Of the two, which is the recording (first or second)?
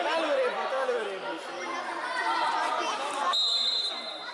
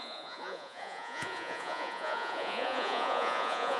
first